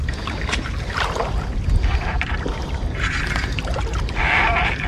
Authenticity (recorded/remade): remade